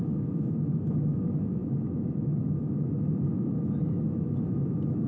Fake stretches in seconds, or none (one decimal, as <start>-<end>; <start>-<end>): 0.0-5.1